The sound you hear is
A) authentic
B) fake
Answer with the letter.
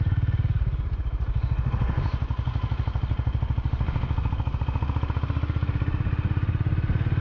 A